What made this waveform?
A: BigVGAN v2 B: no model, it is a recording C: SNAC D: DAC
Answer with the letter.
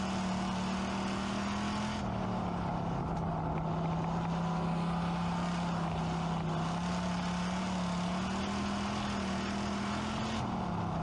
B